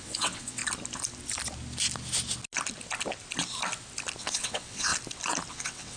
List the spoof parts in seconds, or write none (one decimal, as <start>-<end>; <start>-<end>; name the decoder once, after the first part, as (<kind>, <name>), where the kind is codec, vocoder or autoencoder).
0.0-0.6 (vocoder, WaveNeXt); 4.2-4.9; 5.5-6.0